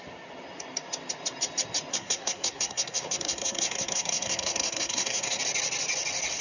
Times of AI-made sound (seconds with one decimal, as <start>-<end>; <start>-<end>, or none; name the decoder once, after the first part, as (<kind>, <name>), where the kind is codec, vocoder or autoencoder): 1.9-5.4 (codec, SNAC)